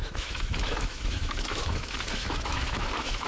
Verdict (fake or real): fake